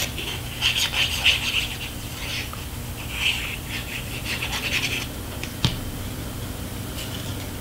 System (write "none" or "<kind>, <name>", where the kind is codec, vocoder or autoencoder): none